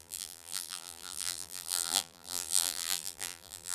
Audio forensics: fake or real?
fake